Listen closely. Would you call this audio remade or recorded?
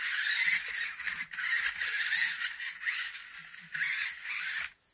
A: recorded